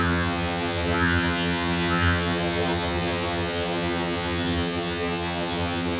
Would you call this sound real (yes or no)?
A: no